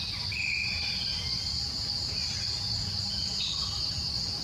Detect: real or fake real